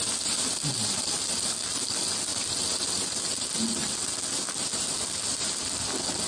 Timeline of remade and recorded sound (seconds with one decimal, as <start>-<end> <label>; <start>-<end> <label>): 0.0-6.3 recorded